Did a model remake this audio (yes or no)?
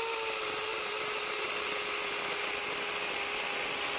no